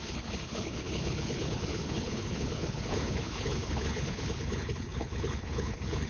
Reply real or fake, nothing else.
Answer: fake